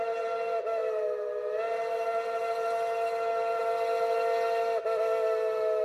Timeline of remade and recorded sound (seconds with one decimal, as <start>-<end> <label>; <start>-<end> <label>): 0.0-5.8 recorded